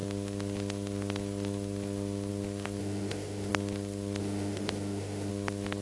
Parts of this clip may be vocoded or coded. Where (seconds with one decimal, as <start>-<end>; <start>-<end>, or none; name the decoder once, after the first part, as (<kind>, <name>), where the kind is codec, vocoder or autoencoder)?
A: 2.8-3.5 (autoencoder, DAC-VAE); 4.2-5.3